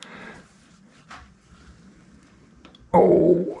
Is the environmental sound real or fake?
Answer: fake